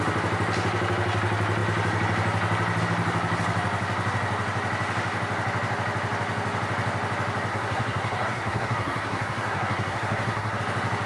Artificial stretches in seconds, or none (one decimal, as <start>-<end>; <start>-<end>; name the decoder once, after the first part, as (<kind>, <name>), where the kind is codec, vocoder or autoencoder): 7.5-10.6 (codec, SNAC)